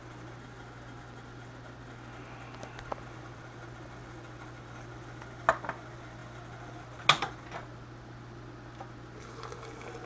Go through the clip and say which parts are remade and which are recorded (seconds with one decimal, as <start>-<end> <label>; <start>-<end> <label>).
0.0-10.1 recorded